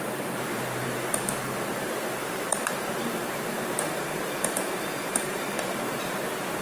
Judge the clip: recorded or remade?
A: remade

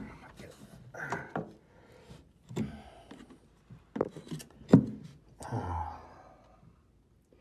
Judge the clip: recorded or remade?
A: recorded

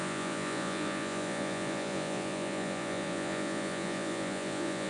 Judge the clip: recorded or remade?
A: remade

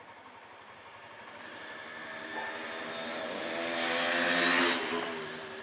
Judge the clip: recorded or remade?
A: recorded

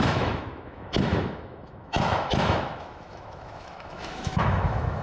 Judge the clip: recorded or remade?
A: remade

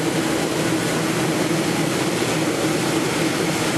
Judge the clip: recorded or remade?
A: recorded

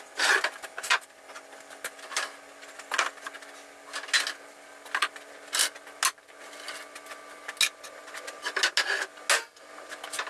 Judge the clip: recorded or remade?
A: recorded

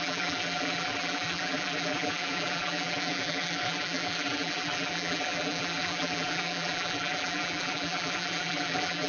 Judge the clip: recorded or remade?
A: remade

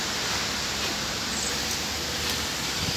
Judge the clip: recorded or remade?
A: recorded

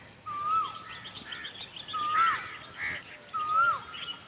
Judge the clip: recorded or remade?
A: recorded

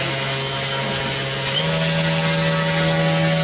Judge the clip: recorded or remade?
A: recorded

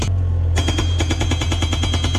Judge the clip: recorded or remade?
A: recorded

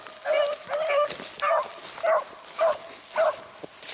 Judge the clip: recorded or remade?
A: recorded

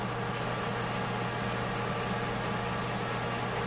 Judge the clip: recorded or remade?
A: recorded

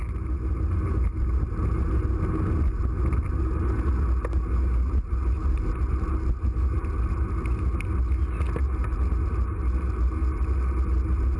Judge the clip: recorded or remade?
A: recorded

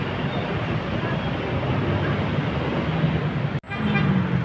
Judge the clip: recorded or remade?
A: recorded